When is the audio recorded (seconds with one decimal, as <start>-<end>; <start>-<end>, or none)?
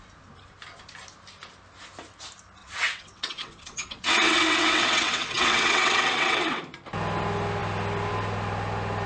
0.0-2.6; 6.6-9.1